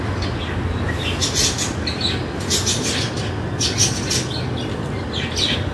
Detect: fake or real real